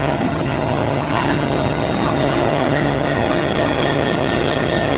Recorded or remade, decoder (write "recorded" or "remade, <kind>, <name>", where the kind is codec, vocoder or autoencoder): remade, vocoder, HiFi-GAN